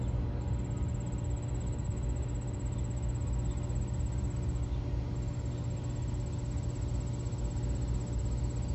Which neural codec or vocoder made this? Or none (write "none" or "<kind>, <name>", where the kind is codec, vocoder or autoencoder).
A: none